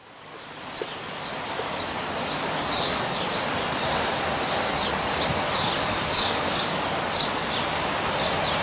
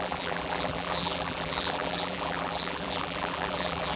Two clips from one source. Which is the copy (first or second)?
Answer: second